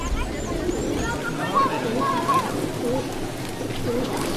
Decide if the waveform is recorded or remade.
recorded